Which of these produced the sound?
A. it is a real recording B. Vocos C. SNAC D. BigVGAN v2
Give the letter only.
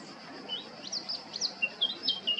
A